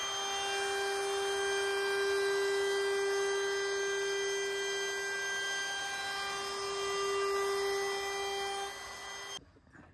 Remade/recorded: recorded